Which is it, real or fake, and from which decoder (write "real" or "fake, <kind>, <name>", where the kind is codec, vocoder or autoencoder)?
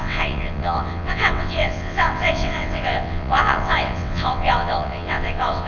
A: fake, vocoder, WaveNeXt